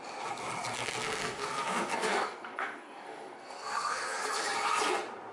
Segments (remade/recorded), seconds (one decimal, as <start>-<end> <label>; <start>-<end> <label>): 0.0-1.2 recorded; 1.2-4.4 remade; 4.4-5.3 recorded